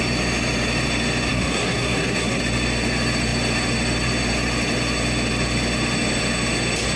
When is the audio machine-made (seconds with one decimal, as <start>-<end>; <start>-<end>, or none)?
1.3-2.4